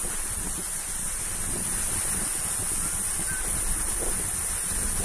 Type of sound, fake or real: real